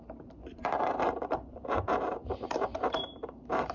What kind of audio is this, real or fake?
fake